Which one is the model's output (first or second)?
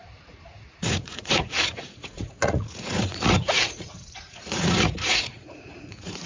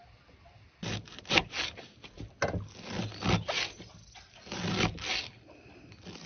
first